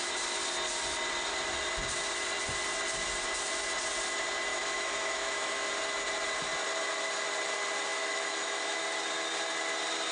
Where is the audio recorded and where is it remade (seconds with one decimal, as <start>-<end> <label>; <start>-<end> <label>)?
0.0-4.5 recorded; 4.5-5.7 remade; 5.7-7.9 recorded; 7.9-8.8 remade; 8.8-10.1 recorded